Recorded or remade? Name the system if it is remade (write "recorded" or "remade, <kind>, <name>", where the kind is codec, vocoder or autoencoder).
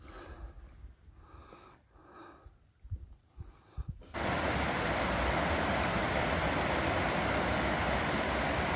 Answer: recorded